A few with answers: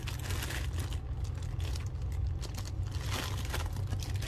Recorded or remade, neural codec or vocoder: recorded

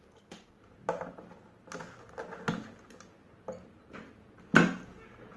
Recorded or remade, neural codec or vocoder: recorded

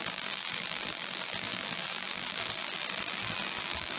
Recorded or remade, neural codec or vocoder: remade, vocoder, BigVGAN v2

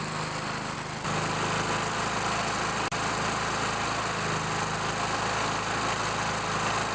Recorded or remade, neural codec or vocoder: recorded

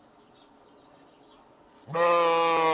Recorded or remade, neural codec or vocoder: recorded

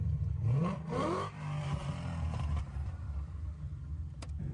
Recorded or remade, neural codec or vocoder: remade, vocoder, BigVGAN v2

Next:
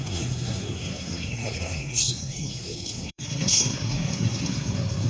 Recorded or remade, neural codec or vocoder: remade, codec, SNAC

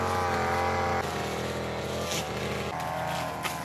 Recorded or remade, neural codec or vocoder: recorded